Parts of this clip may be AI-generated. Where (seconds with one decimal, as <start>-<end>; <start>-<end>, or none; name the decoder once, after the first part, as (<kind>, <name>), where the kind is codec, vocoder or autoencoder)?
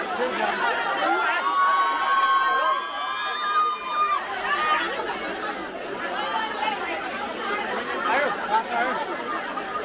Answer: none